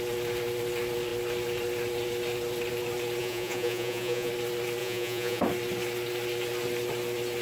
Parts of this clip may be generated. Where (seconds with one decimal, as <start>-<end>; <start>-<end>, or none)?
3.2-4.3; 4.8-5.4